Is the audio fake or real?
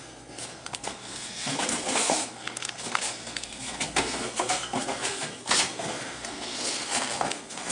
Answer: fake